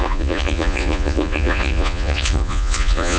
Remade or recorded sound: remade